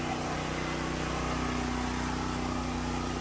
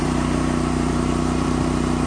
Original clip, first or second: first